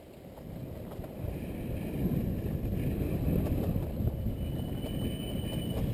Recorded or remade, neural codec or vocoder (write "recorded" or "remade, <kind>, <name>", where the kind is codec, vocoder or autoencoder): recorded